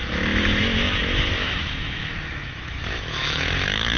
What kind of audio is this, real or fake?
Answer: fake